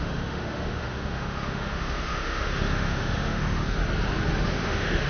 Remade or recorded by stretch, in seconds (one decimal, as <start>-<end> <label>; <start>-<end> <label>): 0.0-3.8 remade; 3.8-4.3 recorded; 4.3-5.1 remade